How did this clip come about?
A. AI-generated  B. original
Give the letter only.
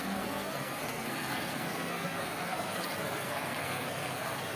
A